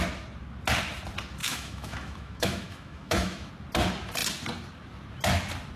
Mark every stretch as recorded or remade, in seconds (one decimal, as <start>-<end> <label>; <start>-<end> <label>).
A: 0.0-1.4 recorded; 1.4-3.5 remade; 3.5-5.8 recorded